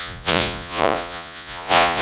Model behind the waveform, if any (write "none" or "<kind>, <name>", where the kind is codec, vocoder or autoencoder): vocoder, Vocos